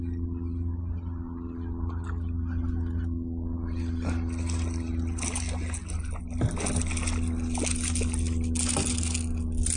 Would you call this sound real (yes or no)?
yes